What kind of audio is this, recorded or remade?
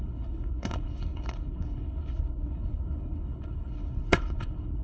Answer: remade